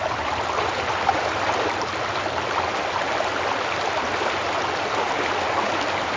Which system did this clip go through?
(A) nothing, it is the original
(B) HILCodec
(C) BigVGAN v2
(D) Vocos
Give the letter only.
A